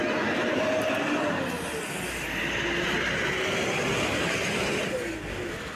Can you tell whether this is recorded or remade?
recorded